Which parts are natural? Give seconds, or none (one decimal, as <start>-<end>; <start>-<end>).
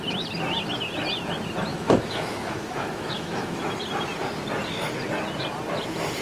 0.0-1.7; 3.8-6.2